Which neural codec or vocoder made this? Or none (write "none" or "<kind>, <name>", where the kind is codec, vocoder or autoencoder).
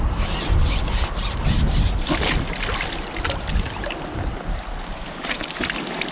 none